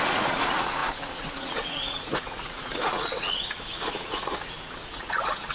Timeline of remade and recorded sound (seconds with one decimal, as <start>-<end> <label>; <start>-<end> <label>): 0.0-5.5 remade